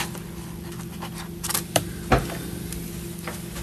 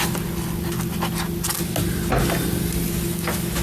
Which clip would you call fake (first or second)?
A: first